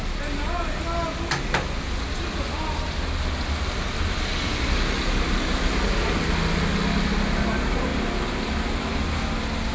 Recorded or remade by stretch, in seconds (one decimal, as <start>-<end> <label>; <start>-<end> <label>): 0.0-9.7 recorded

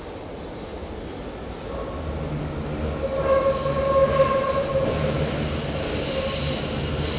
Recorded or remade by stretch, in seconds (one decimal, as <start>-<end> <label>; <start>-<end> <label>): 0.0-4.0 recorded; 4.0-5.9 remade; 5.9-7.2 recorded

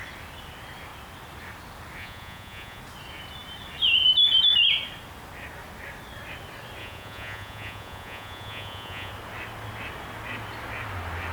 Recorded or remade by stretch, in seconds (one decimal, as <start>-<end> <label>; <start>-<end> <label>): 0.0-2.0 recorded; 2.0-2.8 remade; 2.8-6.8 recorded; 6.8-9.1 remade; 9.1-11.3 recorded

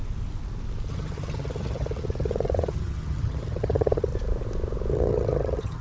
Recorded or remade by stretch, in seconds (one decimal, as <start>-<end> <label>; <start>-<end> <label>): 0.0-0.9 recorded; 0.9-4.1 remade; 4.1-4.9 recorded; 4.9-5.8 remade

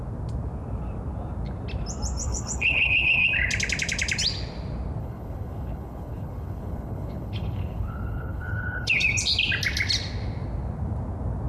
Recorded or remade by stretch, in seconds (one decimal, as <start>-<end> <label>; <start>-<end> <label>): 0.0-2.2 recorded; 2.2-3.5 remade; 3.5-5.0 recorded; 5.0-9.0 remade; 9.0-11.5 recorded

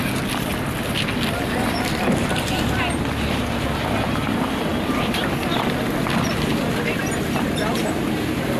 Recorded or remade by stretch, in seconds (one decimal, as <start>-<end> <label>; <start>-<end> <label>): 0.0-4.7 recorded; 4.7-5.8 remade; 5.8-7.8 recorded; 7.8-8.6 remade